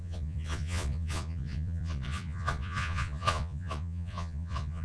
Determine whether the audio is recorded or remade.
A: remade